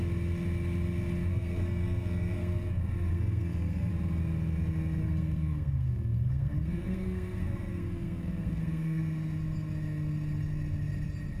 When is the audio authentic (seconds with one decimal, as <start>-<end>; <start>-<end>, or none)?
0.0-1.3; 3.9-5.0; 9.0-11.4